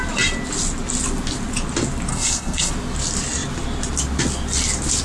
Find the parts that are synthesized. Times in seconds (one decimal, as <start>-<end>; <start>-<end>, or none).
2.1-2.7